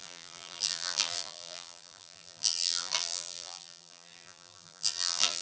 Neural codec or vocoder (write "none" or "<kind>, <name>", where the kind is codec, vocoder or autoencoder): vocoder, BigVGAN v2